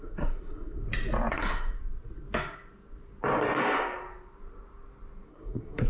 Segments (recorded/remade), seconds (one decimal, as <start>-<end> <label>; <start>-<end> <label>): 0.0-0.8 remade; 0.8-1.3 recorded; 1.3-1.8 remade; 1.8-5.3 recorded; 5.3-5.9 remade